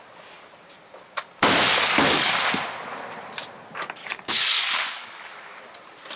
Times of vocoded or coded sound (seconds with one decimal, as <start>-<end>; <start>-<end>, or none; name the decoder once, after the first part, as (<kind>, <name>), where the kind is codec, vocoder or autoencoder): 1.7-2.3 (codec, DAC); 4.0-5.6